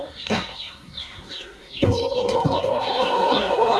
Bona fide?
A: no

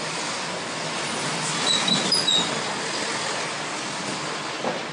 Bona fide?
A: yes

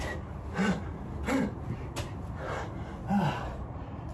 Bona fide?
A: yes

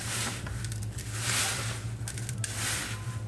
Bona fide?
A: yes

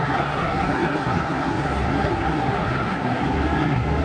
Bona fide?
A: no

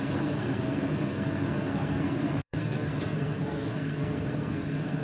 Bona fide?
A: no